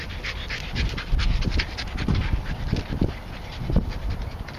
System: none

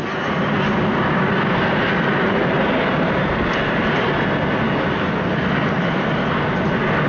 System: none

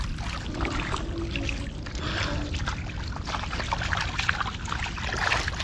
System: none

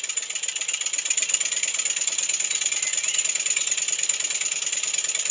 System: none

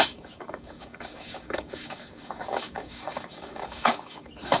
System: codec, DAC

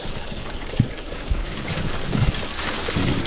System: codec, DAC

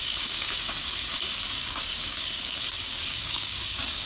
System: codec, DAC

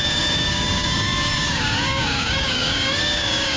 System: codec, DAC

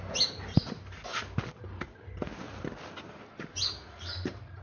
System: none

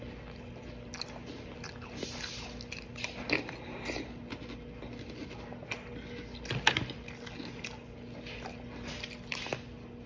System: none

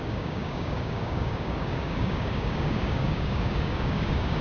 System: codec, DAC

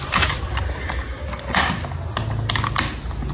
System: none